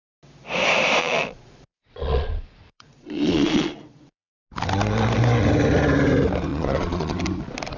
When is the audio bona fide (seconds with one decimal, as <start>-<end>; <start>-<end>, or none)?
0.0-1.0; 4.3-6.5; 7.2-7.8